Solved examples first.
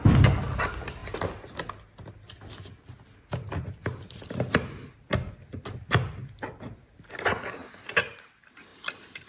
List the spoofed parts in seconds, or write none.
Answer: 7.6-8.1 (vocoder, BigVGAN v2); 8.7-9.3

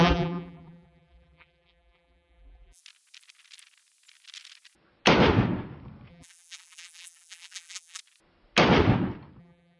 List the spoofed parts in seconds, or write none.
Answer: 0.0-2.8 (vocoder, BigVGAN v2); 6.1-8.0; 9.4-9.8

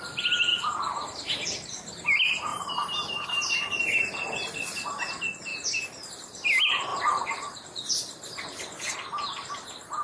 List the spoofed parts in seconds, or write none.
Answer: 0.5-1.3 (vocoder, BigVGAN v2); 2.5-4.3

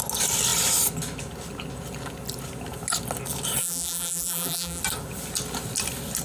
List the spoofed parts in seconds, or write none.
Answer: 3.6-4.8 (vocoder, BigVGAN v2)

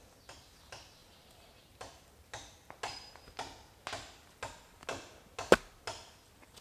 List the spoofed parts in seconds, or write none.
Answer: none

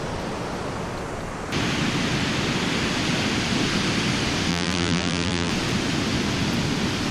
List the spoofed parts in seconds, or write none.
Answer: 4.5-5.5 (vocoder, BigVGAN v2)

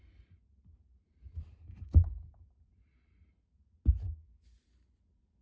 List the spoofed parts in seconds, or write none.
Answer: 0.5-3.7 (vocoder, BigVGAN v2)